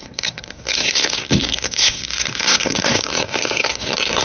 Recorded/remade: remade